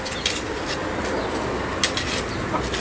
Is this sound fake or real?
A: real